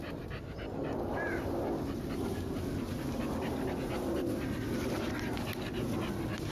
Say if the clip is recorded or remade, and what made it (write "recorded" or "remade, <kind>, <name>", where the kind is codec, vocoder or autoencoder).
recorded